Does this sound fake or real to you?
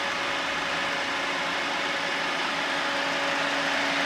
real